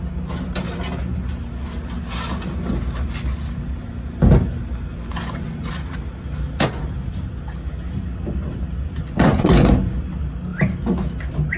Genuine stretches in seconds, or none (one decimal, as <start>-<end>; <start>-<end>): 0.0-4.9; 5.7-9.0; 9.7-11.6